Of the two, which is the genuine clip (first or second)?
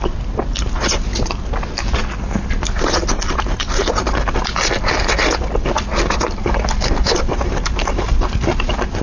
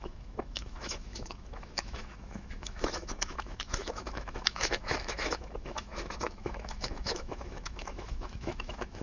first